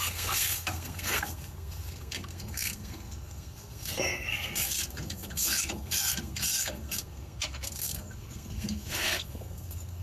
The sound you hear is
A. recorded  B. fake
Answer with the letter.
B